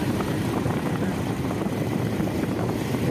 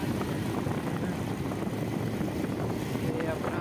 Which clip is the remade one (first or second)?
first